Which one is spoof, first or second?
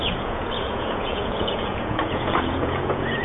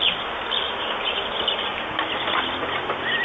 first